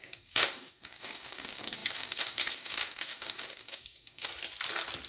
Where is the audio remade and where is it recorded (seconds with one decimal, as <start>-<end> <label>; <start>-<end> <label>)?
0.0-4.3 remade; 4.3-5.1 recorded